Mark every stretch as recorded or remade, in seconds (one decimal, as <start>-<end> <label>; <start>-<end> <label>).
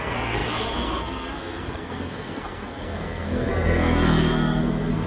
0.0-5.1 remade